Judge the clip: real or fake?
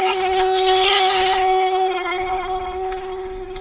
fake